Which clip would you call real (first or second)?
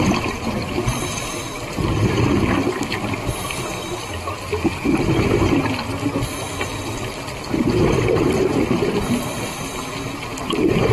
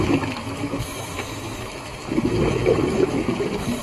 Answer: first